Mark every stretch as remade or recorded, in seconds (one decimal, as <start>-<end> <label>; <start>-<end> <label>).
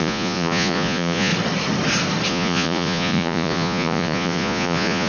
0.0-1.3 remade; 1.3-2.3 recorded; 2.3-5.1 remade